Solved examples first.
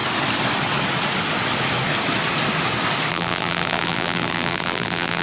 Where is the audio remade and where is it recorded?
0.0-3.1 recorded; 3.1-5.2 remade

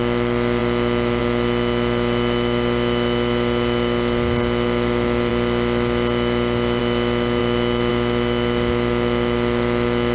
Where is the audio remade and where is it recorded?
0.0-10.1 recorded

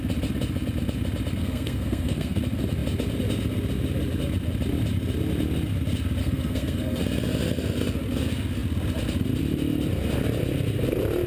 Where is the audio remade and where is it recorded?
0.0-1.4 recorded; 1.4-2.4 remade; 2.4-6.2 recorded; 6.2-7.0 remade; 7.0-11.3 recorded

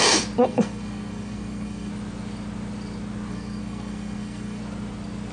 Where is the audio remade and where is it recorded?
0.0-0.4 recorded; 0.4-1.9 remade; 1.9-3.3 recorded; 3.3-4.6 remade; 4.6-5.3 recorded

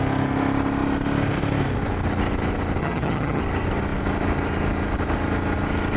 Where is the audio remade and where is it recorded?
0.0-2.8 recorded; 2.8-3.4 remade; 3.4-6.0 recorded